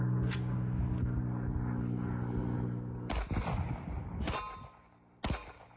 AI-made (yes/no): no